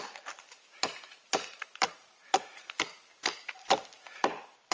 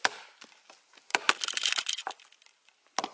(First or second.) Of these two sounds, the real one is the second